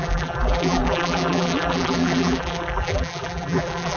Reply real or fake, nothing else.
fake